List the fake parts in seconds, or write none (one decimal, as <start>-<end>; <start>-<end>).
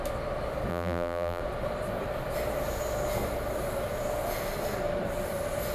0.7-1.4